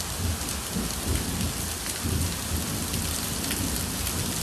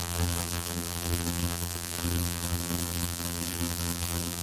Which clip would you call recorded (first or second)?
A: first